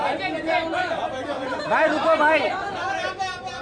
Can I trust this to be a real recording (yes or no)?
yes